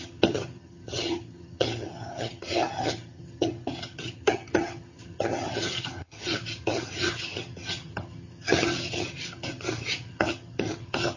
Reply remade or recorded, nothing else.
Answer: remade